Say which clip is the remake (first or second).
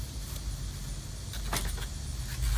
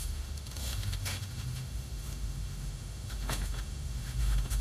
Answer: second